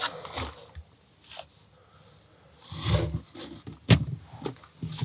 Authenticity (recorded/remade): recorded